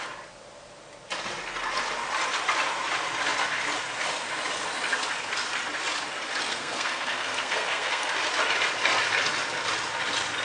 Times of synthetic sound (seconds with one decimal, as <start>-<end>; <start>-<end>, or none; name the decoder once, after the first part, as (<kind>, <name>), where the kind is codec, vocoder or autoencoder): 6.5-8.1 (codec, SNAC)